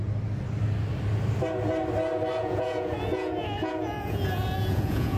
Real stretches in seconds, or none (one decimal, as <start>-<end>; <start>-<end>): 0.0-2.4